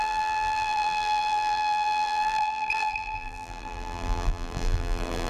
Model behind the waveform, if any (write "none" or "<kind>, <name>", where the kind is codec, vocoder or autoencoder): vocoder, BigVGAN v2